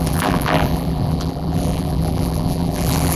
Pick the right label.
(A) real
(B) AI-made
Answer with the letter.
B